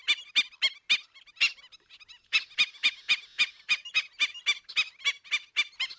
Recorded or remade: recorded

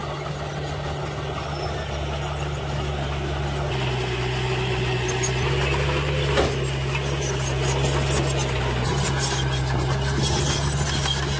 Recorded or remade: recorded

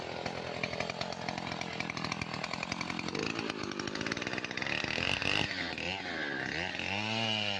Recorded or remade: recorded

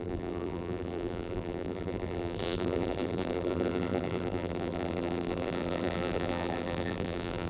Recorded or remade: remade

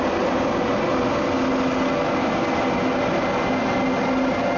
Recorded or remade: recorded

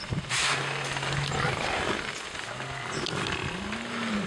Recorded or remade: recorded